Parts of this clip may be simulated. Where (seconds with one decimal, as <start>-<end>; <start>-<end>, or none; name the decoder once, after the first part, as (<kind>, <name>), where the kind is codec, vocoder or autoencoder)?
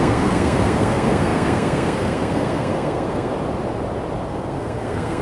0.0-3.3 (codec, SNAC); 4.3-5.2